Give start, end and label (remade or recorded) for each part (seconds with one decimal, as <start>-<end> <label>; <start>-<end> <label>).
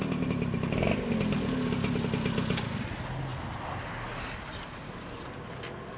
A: 0.0-3.3 recorded; 3.3-5.5 remade; 5.5-6.0 recorded